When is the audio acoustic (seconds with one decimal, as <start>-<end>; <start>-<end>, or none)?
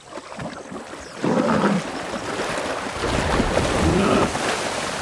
0.0-5.0